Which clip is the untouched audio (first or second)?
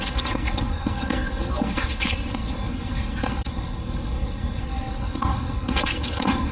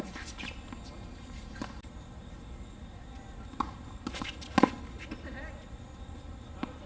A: second